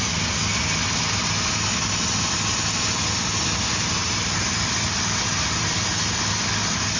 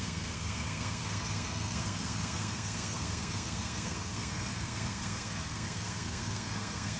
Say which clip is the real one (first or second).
first